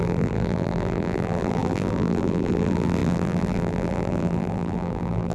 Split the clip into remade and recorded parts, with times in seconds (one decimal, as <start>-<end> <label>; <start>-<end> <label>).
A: 0.0-5.3 remade